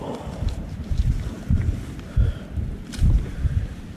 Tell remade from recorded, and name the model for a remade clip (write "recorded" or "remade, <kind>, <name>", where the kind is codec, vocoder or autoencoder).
remade, vocoder, BigVGAN v2